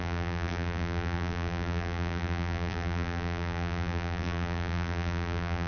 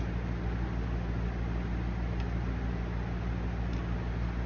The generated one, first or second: first